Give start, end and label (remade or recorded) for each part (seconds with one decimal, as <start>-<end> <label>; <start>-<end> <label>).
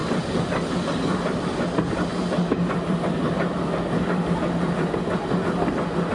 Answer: 0.0-6.1 recorded